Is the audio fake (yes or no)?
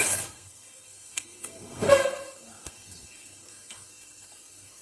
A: yes